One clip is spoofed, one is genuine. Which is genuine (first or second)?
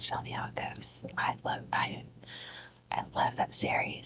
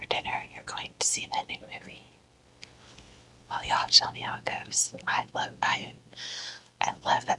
second